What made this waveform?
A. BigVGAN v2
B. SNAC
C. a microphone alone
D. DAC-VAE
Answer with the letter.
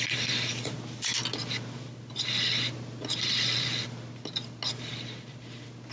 C